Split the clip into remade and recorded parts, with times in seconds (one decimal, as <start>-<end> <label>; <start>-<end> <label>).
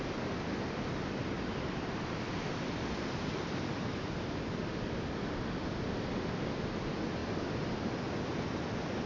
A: 0.0-9.1 recorded